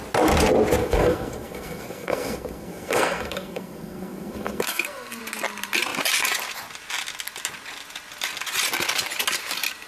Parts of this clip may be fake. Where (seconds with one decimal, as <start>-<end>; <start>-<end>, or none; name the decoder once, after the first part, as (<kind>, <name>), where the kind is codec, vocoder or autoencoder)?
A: 0.8-5.2 (codec, SNAC)